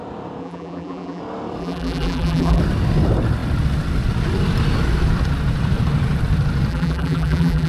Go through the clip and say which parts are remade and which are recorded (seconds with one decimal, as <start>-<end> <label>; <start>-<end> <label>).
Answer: 0.0-0.4 recorded; 0.4-1.2 remade; 1.2-1.6 recorded; 1.6-2.6 remade; 2.6-6.7 recorded; 6.7-7.7 remade